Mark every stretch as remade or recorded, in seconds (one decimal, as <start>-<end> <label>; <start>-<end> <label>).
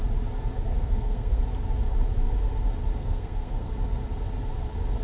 0.0-0.7 recorded; 0.7-1.4 remade; 1.4-3.0 recorded; 3.0-3.7 remade; 3.7-5.0 recorded